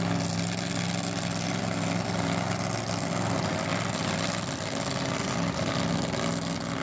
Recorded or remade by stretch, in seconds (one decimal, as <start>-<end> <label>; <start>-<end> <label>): 0.0-6.8 recorded